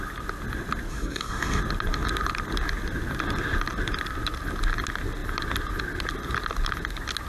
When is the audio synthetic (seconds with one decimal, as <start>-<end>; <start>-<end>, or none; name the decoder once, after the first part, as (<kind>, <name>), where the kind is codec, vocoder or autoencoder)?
0.9-1.6 (codec, DAC)